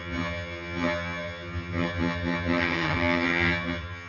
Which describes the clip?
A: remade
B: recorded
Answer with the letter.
A